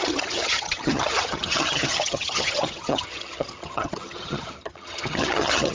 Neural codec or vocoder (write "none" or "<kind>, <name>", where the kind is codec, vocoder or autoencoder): vocoder, HiFi-GAN